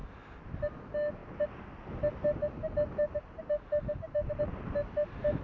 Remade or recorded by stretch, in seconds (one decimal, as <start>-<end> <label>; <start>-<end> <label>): 0.0-5.4 recorded